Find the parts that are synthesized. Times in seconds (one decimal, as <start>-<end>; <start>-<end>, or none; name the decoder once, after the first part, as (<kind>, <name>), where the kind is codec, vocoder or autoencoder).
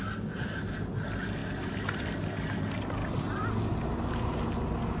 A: none